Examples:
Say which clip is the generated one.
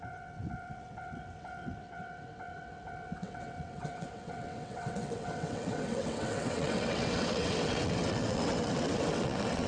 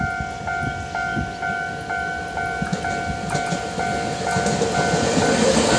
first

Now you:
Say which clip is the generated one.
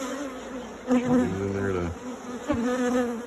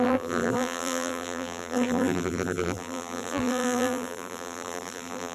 second